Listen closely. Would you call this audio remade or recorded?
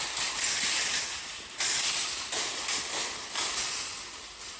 recorded